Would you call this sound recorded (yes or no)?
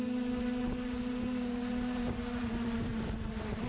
no